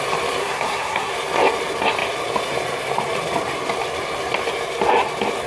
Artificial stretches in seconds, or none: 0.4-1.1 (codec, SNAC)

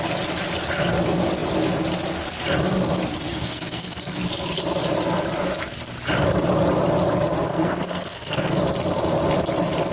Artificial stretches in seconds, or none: 3.3-4.2 (codec, SNAC); 7.5-8.6